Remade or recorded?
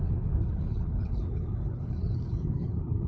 remade